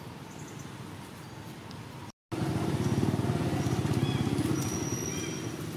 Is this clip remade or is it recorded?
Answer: recorded